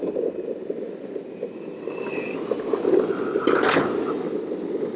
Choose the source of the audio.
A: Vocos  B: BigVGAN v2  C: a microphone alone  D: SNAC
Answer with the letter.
C